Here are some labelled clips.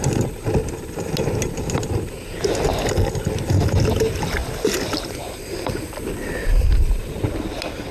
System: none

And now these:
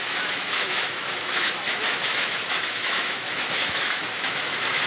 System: autoencoder, DAC-VAE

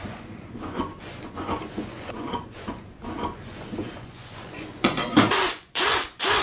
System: vocoder, Vocos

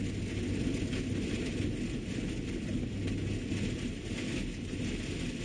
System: none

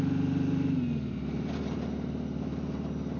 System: none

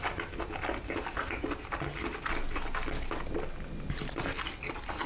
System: none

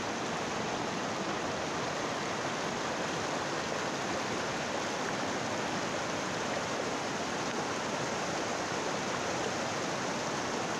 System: none